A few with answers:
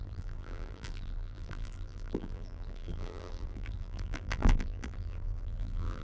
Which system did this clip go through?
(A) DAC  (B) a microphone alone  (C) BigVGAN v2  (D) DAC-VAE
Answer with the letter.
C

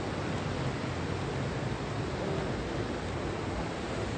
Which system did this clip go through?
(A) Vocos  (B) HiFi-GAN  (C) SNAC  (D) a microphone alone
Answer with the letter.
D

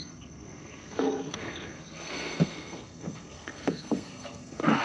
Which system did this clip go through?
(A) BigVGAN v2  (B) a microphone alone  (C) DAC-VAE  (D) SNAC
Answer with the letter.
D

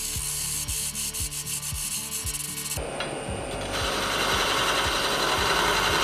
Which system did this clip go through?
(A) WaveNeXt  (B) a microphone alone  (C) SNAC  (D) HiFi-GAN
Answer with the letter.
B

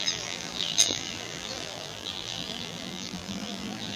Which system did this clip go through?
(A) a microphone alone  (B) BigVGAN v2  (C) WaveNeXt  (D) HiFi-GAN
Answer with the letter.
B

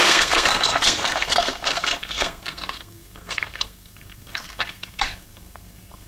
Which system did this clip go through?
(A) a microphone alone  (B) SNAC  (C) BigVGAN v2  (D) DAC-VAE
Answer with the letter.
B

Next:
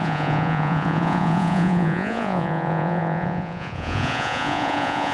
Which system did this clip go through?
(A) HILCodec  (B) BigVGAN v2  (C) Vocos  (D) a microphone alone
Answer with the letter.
C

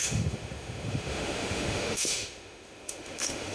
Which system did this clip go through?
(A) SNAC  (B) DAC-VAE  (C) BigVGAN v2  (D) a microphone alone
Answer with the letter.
B